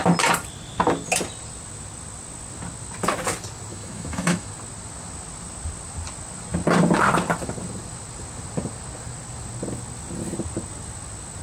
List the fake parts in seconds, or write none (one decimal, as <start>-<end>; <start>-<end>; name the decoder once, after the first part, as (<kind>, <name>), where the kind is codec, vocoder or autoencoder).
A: 3.7-4.5 (autoencoder, DAC-VAE)